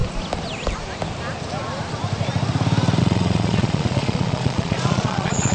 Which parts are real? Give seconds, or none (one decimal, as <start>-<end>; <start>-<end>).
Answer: 0.0-3.0